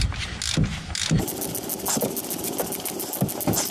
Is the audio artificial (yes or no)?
no